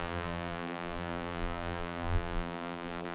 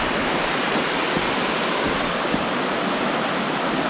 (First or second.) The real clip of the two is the second